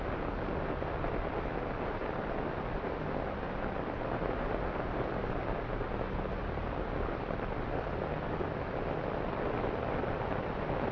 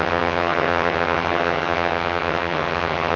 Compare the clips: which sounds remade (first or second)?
second